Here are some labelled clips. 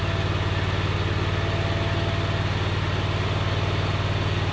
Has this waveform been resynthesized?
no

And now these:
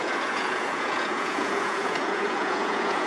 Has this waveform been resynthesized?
yes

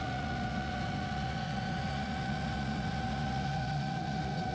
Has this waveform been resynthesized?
yes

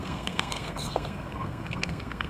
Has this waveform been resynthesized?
yes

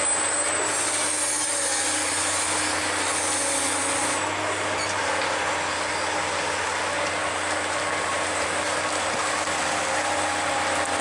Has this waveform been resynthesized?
no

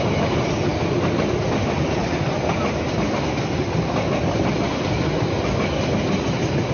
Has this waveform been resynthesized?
no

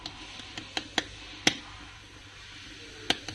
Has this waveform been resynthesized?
no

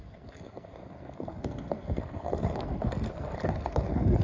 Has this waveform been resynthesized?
yes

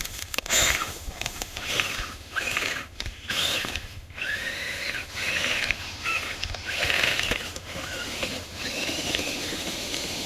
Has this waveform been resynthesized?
yes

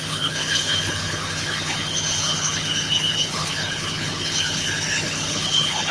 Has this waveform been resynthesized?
yes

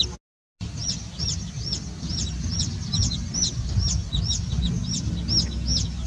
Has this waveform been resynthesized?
no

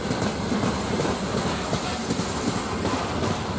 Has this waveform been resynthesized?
no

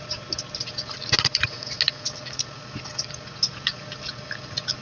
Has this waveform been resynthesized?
no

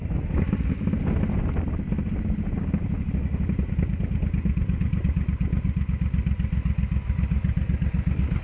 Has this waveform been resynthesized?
no